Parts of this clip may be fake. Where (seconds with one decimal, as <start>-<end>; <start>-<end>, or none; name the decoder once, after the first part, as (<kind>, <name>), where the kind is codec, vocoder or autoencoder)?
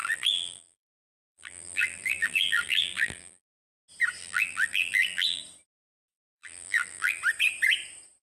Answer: 0.0-3.8 (vocoder, BigVGAN v2); 4.2-5.4; 6.1-7.2